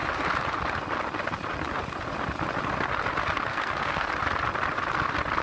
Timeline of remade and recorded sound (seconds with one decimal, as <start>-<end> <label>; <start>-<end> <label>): 0.0-3.5 recorded; 3.5-4.1 remade; 4.1-5.4 recorded